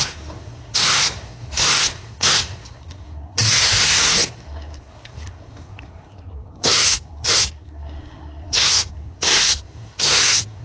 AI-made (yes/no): yes